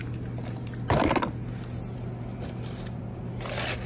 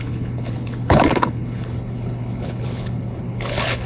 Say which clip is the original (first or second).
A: first